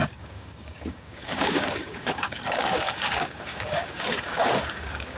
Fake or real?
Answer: fake